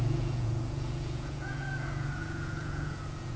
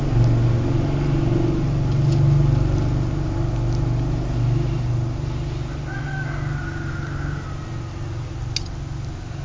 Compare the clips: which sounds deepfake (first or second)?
first